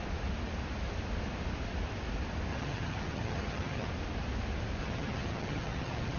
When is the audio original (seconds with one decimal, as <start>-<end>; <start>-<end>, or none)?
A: 0.0-2.5; 3.9-4.8